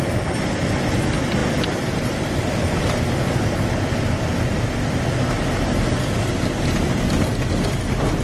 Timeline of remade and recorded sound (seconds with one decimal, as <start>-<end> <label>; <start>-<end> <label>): 0.0-8.2 recorded

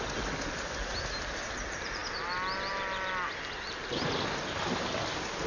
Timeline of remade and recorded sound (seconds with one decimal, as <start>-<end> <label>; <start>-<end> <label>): 0.0-5.5 recorded

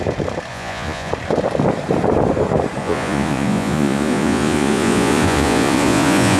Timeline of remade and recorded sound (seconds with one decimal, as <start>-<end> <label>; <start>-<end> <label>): 0.0-0.5 recorded; 0.5-1.1 remade; 1.1-2.8 recorded; 2.8-6.4 remade